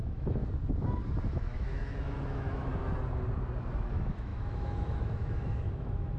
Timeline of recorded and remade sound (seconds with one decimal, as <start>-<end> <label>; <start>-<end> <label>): 0.0-0.4 remade; 0.4-1.3 recorded; 1.3-2.7 remade; 2.7-3.9 recorded; 3.9-6.2 remade